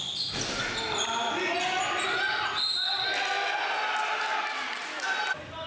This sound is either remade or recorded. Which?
recorded